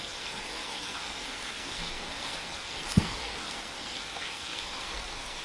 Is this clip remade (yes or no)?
yes